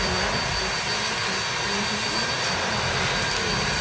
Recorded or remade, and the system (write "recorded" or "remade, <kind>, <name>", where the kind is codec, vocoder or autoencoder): recorded